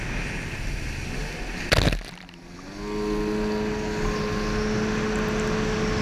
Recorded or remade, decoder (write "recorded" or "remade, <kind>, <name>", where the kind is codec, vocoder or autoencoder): recorded